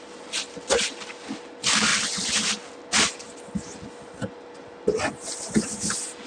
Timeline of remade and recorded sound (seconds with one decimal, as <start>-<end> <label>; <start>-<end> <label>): 0.0-6.3 recorded